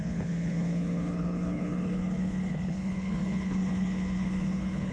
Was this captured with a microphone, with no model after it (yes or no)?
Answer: no